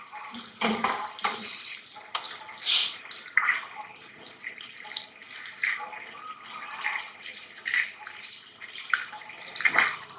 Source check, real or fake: fake